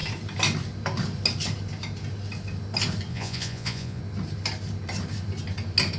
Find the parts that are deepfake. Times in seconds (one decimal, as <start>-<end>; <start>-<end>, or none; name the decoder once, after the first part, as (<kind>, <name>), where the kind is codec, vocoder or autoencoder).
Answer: 3.1-4.0 (vocoder, Vocos)